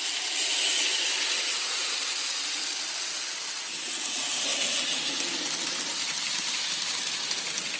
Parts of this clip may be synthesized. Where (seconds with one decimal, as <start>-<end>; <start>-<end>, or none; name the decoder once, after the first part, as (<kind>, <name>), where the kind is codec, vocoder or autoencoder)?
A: none